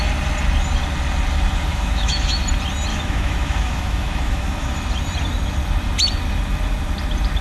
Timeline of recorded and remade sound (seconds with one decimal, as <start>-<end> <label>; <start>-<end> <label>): 0.0-1.7 recorded; 1.7-2.4 remade; 2.4-2.9 recorded; 2.9-4.7 remade; 4.7-7.4 recorded